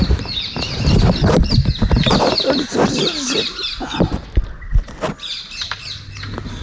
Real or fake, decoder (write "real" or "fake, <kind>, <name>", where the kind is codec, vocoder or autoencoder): real